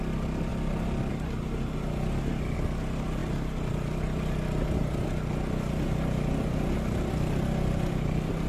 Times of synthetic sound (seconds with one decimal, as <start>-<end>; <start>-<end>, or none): none